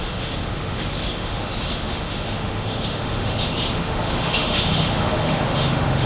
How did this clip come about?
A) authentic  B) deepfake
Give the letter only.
B